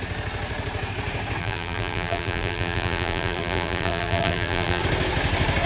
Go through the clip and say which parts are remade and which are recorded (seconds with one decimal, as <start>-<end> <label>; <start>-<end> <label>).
0.0-1.4 recorded; 1.4-4.8 remade; 4.8-5.7 recorded